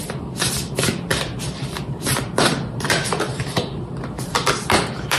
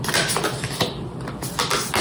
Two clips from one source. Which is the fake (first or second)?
first